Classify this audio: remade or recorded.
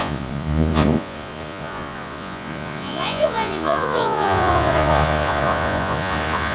remade